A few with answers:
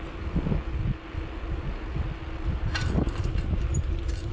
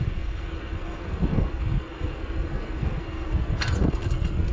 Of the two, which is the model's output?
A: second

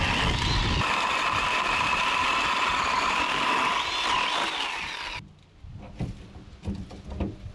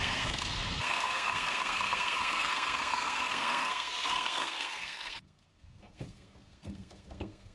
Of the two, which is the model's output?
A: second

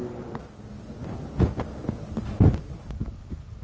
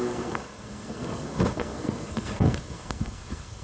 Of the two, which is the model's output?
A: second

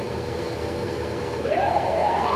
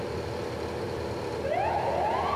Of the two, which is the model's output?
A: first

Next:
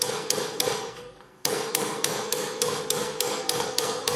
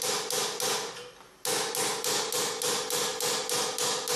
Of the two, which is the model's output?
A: first